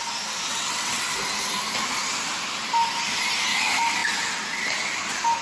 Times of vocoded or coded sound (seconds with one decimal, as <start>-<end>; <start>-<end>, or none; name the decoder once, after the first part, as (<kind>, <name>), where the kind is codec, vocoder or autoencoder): 0.5-1.0 (vocoder, WaveNeXt)